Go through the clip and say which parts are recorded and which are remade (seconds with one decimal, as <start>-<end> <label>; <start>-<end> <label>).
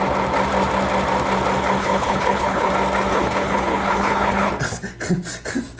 0.0-1.8 recorded; 1.8-2.7 remade; 2.7-3.1 recorded; 3.1-4.5 remade; 4.5-5.8 recorded